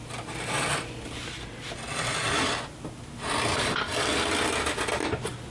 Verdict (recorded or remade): recorded